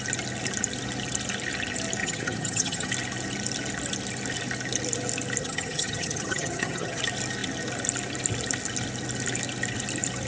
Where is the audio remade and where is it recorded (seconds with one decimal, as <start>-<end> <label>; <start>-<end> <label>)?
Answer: 0.0-2.0 recorded; 2.0-2.9 remade; 2.9-5.4 recorded; 5.4-7.0 remade; 7.0-10.3 recorded